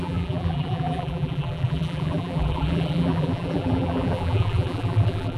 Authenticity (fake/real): fake